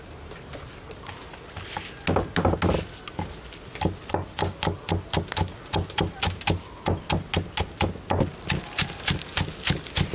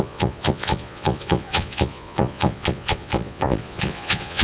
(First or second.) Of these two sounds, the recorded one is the first